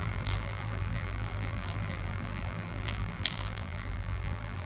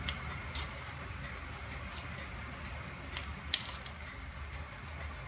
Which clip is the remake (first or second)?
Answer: first